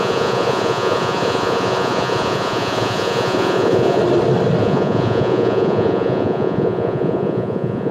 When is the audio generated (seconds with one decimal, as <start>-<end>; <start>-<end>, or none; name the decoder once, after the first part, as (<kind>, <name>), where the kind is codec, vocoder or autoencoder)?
0.0-4.0 (vocoder, Vocos); 4.6-7.9